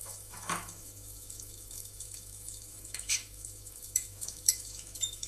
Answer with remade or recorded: remade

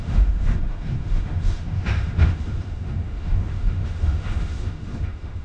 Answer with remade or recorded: remade